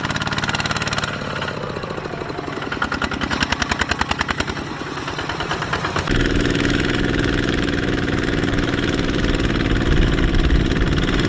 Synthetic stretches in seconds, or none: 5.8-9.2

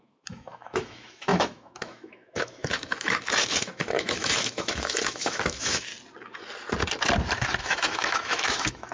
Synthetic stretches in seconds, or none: 0.0-5.9; 7.6-8.9

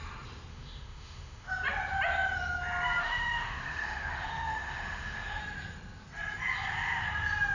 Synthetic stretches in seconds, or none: 0.5-1.5; 3.0-5.4

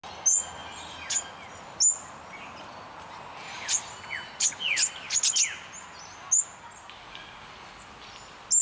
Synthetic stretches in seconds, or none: none

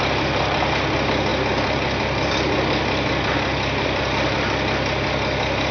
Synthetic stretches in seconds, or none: none

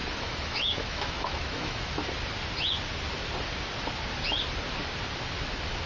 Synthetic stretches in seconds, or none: 0.0-2.0; 5.5-5.9